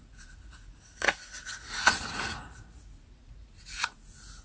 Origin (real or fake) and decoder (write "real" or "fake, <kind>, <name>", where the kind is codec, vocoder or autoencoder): fake, vocoder, Vocos